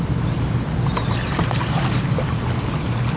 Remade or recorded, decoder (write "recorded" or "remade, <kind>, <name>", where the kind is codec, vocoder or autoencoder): recorded